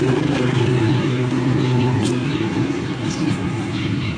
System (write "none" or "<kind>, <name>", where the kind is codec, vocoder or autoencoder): codec, SNAC